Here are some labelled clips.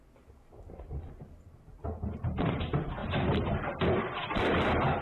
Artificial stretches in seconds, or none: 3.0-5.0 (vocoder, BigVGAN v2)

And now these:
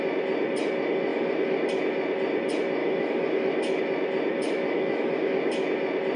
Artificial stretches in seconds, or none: 2.8-3.8 (autoencoder, DAC-VAE); 4.3-5.3

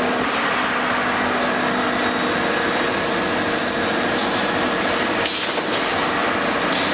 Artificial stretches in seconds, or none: none

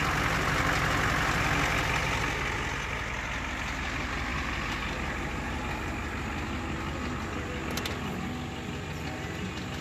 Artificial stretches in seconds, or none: none

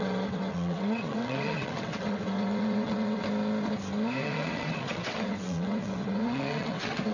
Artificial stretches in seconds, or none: 0.0-3.2 (vocoder, WaveNeXt); 4.2-7.1

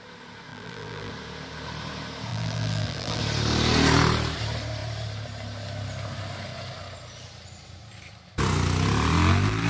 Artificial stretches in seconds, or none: 0.5-1.1 (vocoder, BigVGAN v2); 2.3-3.2

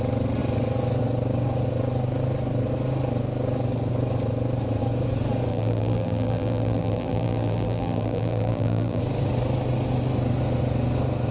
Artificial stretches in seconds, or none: 5.5-9.0 (vocoder, BigVGAN v2)